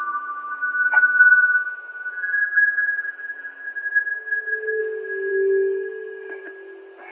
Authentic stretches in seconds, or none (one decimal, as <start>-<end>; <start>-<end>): 0.0-2.4; 4.8-5.3; 6.4-7.1